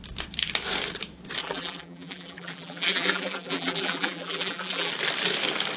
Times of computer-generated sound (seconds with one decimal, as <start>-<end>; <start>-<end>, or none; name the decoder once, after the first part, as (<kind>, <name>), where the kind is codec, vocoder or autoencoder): 1.4-4.9 (vocoder, BigVGAN v2)